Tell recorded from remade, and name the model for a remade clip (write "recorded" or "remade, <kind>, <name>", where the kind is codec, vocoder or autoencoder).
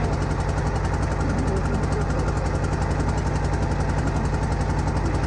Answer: recorded